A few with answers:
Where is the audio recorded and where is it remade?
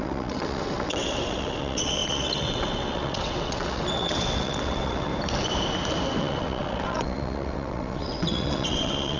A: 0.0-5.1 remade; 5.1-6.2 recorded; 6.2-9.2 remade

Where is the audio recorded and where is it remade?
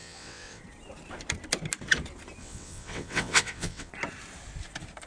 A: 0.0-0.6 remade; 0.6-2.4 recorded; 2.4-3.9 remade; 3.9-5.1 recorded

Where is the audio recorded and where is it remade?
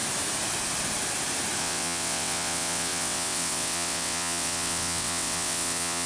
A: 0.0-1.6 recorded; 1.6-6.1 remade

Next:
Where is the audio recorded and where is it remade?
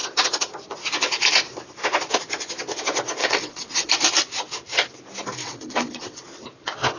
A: 0.0-3.2 recorded; 3.2-3.9 remade; 3.9-5.4 recorded; 5.4-6.2 remade; 6.2-7.0 recorded